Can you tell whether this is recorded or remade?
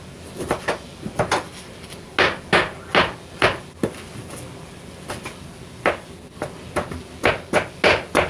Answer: recorded